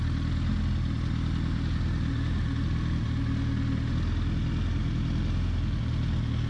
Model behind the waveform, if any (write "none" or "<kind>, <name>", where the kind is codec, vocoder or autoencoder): none